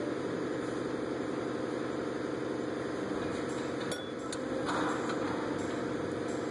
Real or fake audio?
real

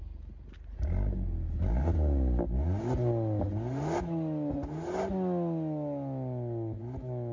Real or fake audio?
real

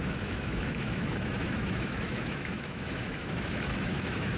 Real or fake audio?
fake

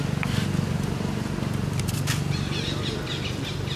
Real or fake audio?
real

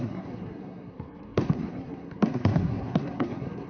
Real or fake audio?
fake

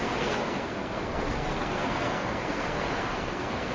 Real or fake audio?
fake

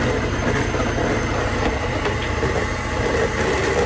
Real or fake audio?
real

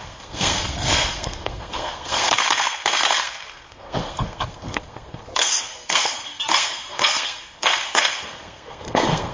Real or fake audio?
fake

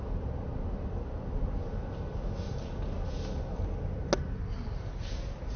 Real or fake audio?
real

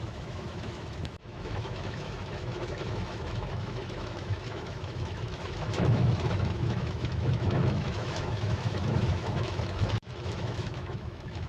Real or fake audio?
fake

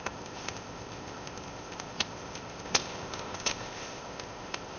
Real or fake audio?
fake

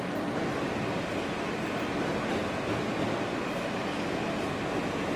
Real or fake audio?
real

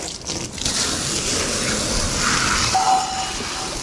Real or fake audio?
real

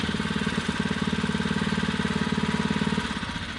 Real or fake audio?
real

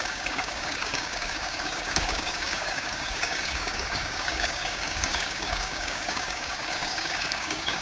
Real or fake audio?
fake